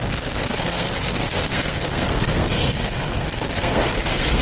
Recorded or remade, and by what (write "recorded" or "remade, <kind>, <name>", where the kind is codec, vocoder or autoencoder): remade, codec, SNAC